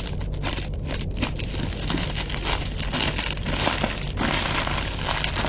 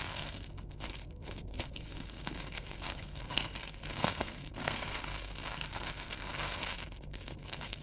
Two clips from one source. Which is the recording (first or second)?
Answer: first